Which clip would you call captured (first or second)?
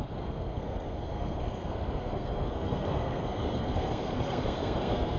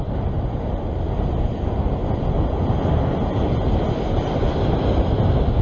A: second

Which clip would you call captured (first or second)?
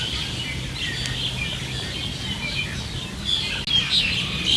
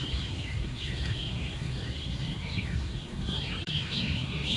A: first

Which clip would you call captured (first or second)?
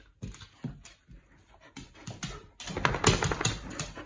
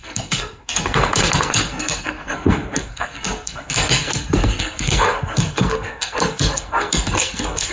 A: first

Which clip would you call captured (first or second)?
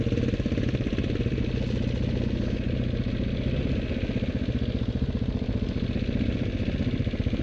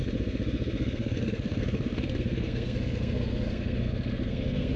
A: first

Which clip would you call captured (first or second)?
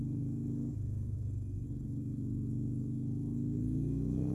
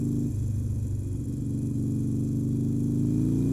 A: second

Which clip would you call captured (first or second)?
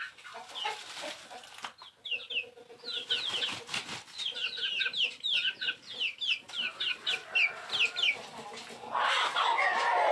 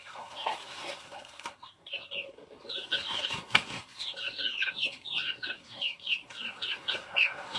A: first